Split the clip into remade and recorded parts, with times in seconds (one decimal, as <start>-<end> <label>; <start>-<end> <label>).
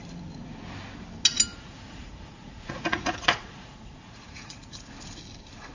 0.0-1.5 recorded; 1.5-4.9 remade; 4.9-5.7 recorded